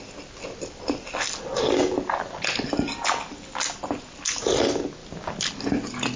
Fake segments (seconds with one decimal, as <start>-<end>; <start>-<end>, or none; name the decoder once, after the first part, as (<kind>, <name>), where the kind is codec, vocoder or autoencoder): none